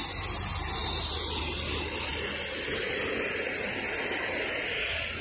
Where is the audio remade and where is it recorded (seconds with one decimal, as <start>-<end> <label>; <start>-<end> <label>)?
0.0-0.8 recorded; 0.8-1.4 remade; 1.4-5.2 recorded

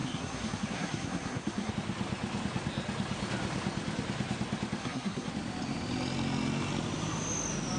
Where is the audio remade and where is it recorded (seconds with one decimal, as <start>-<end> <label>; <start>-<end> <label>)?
0.0-1.7 remade; 1.7-4.8 recorded; 4.8-5.3 remade; 5.3-7.8 recorded

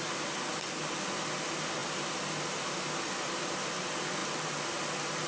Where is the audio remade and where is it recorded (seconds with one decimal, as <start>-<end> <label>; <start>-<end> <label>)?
0.0-5.3 recorded